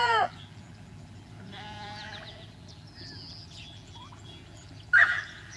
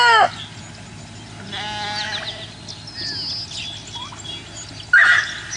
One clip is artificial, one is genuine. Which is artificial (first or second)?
first